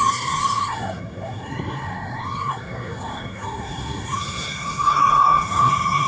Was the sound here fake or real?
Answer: fake